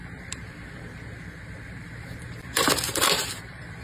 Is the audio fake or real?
fake